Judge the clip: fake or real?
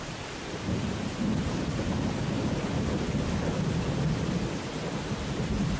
real